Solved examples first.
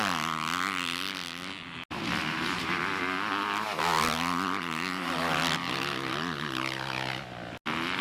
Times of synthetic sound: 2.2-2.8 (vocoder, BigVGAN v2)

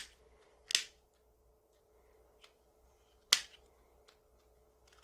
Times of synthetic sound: none

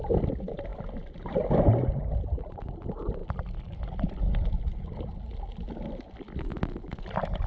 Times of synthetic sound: none

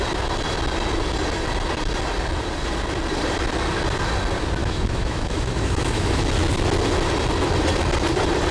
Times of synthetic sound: 4.6-6.2 (autoencoder, DAC-VAE)

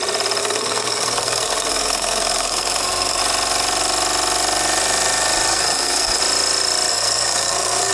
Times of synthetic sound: 0.4-3.2 (codec, SNAC); 5.5-6.2; 6.9-7.9

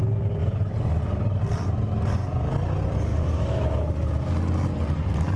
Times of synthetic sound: 3.1-4.3 (autoencoder, DAC-VAE)

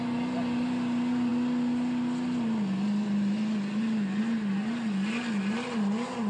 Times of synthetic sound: none

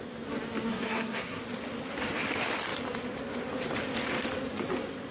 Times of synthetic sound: 0.7-1.4 (codec, SNAC)